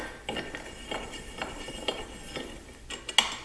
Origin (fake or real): real